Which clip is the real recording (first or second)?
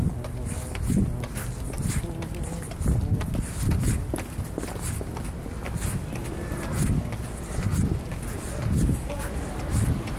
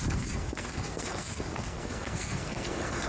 first